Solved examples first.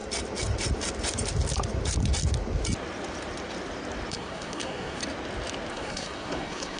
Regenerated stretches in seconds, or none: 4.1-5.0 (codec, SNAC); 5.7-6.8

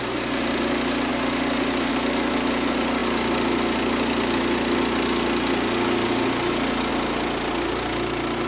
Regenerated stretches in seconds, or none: none

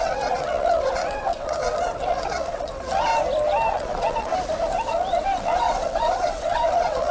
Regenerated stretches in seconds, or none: 0.0-3.1 (vocoder, WaveNeXt); 3.7-4.3; 4.9-7.1

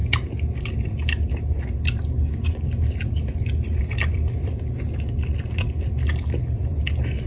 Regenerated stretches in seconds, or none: none

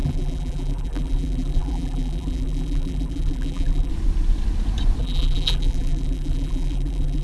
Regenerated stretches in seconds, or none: 0.0-3.9 (vocoder, BigVGAN v2); 5.0-7.2

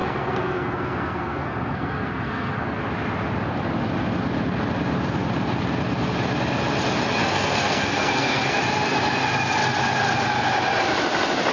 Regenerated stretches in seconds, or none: 0.0-2.8 (codec, SNAC); 7.2-8.6

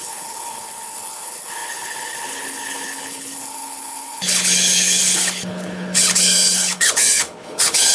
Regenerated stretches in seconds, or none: 0.0-7.9 (codec, HILCodec)